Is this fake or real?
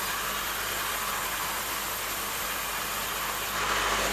real